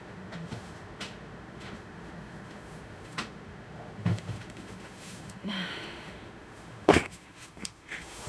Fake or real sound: fake